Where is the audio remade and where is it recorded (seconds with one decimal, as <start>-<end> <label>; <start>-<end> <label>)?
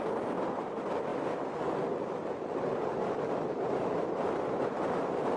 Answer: 0.0-5.4 recorded